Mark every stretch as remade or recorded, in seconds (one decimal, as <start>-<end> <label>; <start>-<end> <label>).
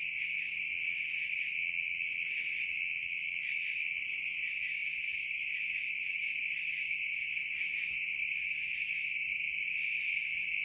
0.0-0.7 recorded; 0.7-4.0 remade; 4.0-10.6 recorded